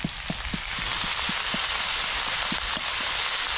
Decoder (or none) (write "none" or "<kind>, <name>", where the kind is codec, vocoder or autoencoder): none